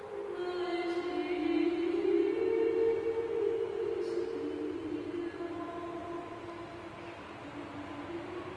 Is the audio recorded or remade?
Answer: recorded